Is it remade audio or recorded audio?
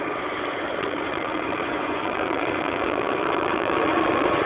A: remade